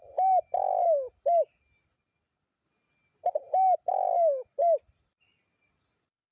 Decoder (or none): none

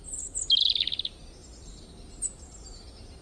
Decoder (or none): none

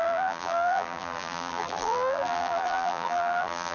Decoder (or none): vocoder, BigVGAN v2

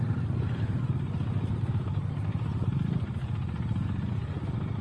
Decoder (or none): none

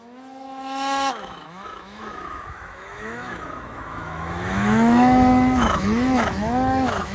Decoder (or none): autoencoder, DAC-VAE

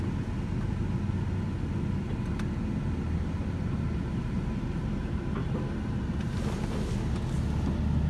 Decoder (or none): none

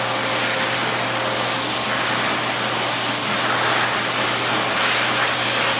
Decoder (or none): none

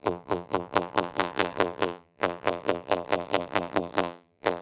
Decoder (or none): vocoder, BigVGAN v2